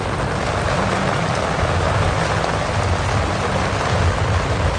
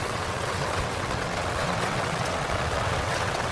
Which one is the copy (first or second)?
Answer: second